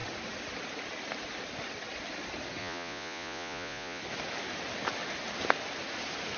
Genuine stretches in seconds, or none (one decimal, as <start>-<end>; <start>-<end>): 0.0-2.6; 4.0-6.4